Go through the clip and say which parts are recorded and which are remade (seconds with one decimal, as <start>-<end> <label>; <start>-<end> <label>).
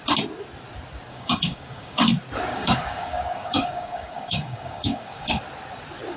0.0-1.1 recorded; 1.1-2.1 remade; 2.1-2.5 recorded; 2.5-5.4 remade; 5.4-6.2 recorded